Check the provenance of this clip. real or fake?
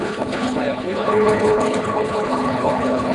fake